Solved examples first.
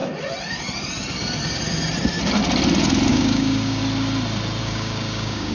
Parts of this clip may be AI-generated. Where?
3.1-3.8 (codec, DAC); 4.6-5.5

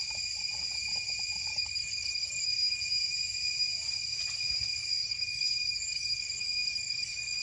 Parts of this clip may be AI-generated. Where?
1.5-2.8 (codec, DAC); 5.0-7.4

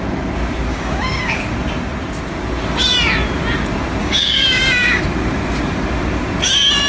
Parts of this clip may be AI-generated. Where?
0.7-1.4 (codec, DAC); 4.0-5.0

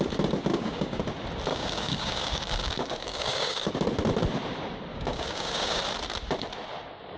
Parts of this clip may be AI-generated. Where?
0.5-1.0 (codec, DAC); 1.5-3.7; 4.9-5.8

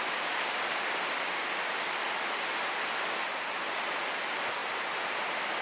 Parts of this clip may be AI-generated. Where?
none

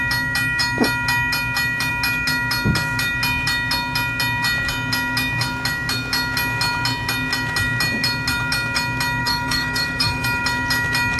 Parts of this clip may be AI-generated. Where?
9.2-10.4 (codec, DAC)